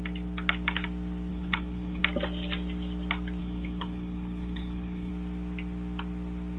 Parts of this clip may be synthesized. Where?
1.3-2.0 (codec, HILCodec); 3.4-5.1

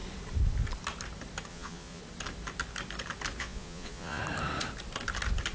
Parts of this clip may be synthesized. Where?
1.5-2.0 (vocoder, Vocos); 3.4-4.2

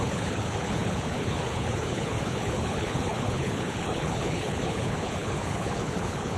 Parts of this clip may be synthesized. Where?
0.0-6.4 (codec, HILCodec)

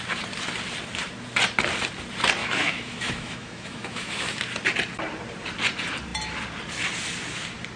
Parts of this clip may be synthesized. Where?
2.4-4.4 (autoencoder, DAC-VAE)

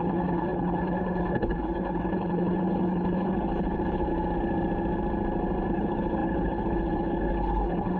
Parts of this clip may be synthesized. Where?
0.0-4.1 (codec, HILCodec); 5.7-8.0

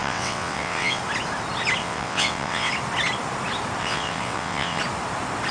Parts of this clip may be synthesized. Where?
0.0-1.0 (vocoder, WaveNeXt); 1.8-2.7; 3.8-4.8

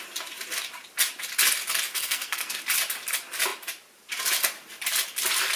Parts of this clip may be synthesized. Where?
1.9-2.6 (codec, SNAC)